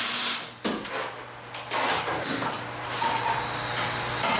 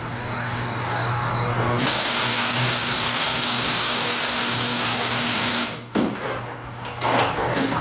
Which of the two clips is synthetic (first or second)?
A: second